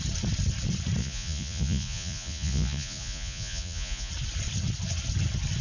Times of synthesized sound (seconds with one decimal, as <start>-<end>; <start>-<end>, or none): 1.0-4.1